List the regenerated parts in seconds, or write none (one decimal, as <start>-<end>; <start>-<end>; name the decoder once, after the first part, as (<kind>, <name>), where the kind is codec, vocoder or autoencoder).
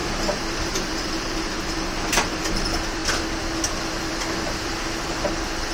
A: 0.0-3.0 (vocoder, BigVGAN v2); 3.8-5.7